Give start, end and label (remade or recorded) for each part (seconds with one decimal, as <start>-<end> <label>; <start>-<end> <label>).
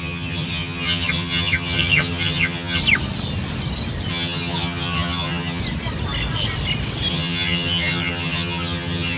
0.0-2.8 remade; 2.8-4.1 recorded; 4.1-5.6 remade; 5.6-7.1 recorded; 7.1-9.2 remade